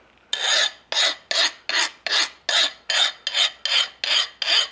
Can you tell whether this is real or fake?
real